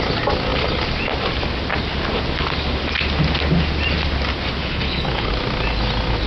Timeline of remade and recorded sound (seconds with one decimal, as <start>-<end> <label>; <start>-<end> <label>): 0.0-4.6 recorded; 4.6-5.3 remade; 5.3-6.3 recorded